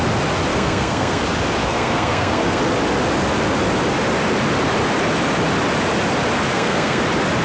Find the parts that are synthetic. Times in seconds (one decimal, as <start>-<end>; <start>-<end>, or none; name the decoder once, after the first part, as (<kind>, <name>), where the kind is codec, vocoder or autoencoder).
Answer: 0.5-1.2 (codec, SNAC); 1.6-2.6; 6.5-7.0